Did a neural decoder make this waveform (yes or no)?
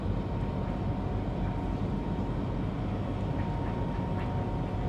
no